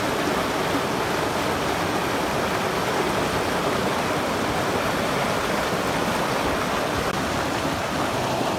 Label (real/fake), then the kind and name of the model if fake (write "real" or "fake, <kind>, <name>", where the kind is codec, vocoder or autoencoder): real